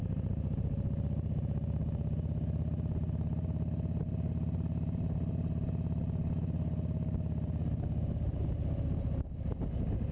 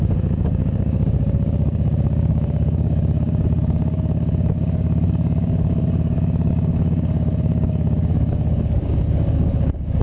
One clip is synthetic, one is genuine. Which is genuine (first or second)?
first